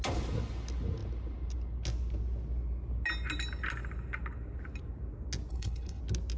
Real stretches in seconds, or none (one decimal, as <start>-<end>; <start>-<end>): 0.0-5.5; 6.0-6.4